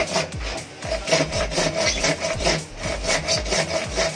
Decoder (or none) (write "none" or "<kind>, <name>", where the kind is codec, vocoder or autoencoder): none